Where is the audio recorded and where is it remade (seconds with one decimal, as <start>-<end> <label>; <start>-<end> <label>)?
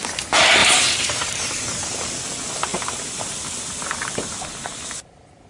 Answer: 0.0-0.6 recorded; 0.6-1.5 remade; 1.5-2.7 recorded; 2.7-4.0 remade; 4.0-5.5 recorded